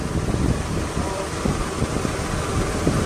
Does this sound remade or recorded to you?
recorded